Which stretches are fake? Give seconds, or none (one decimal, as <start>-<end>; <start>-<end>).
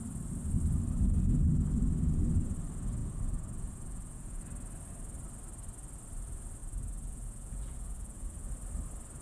3.0-4.4; 6.6-8.5